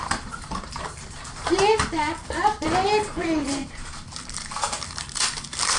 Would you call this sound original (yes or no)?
no